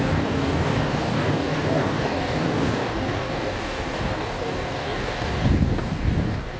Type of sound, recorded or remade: remade